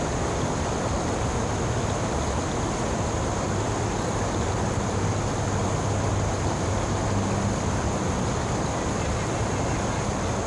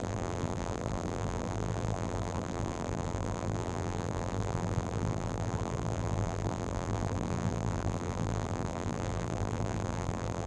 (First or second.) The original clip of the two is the first